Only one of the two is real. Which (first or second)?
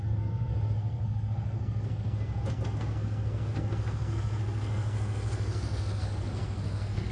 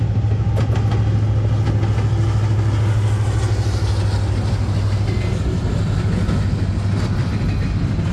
second